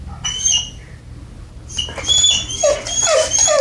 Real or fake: real